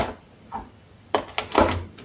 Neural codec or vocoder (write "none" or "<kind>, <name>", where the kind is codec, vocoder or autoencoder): none